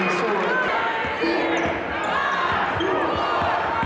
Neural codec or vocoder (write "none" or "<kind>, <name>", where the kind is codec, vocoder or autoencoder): none